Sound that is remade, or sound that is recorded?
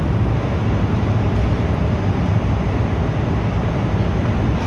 recorded